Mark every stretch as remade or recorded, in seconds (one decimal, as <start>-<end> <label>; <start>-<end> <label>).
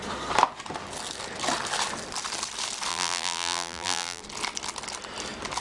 0.0-2.9 recorded; 2.9-4.2 remade; 4.2-5.6 recorded